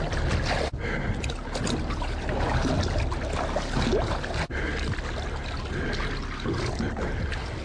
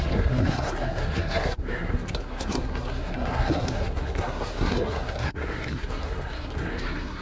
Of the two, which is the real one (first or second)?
first